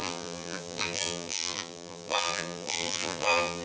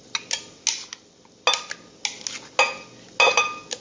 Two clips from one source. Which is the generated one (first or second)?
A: first